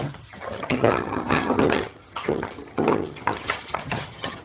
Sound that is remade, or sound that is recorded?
remade